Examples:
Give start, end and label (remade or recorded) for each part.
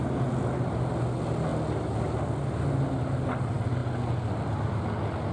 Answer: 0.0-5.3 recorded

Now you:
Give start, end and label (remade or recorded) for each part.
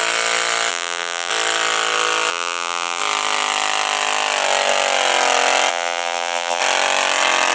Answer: 0.0-0.7 recorded; 0.7-1.3 remade; 1.3-2.3 recorded; 2.3-3.0 remade; 3.0-5.7 recorded; 5.7-6.6 remade; 6.6-7.5 recorded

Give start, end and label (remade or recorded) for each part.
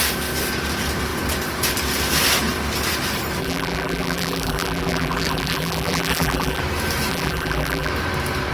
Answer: 0.0-3.4 recorded; 3.4-6.6 remade; 6.6-7.1 recorded; 7.1-7.9 remade; 7.9-8.5 recorded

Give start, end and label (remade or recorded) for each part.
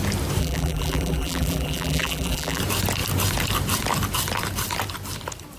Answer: 0.0-0.4 recorded; 0.4-2.6 remade; 2.6-5.6 recorded